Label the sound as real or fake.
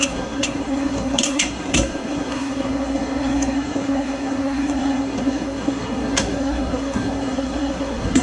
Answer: fake